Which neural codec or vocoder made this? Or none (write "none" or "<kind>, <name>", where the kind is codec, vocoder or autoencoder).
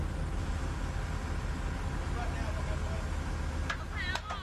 none